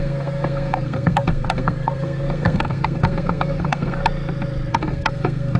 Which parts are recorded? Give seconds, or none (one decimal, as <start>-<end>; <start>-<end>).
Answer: 4.0-4.7